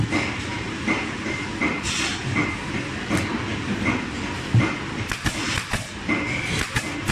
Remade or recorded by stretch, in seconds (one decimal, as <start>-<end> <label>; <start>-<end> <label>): 0.0-0.5 recorded; 0.5-1.6 remade; 1.6-7.1 recorded